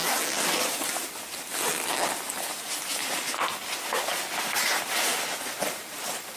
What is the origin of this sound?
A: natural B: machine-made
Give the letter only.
A